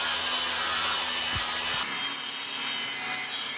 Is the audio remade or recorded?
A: recorded